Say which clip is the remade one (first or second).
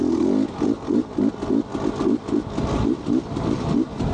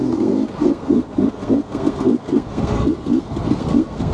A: second